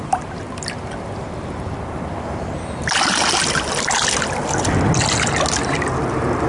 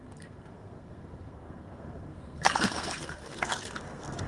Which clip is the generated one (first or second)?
second